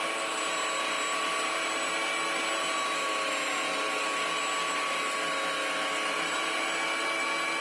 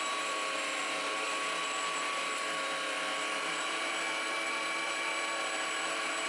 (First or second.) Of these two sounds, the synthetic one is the second